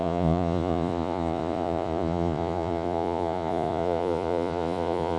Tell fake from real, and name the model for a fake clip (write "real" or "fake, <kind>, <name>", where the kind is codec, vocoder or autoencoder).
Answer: fake, vocoder, Vocos